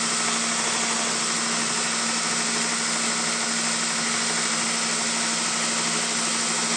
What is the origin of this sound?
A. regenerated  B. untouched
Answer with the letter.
B